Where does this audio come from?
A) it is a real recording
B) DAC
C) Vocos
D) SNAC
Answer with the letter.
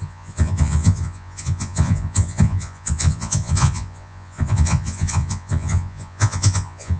C